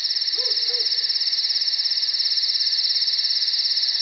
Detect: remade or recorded recorded